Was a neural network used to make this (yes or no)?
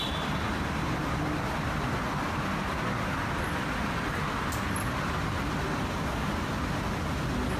no